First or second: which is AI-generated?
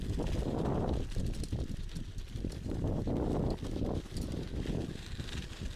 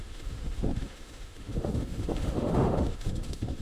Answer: second